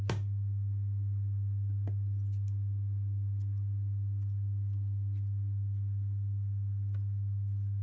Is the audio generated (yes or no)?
no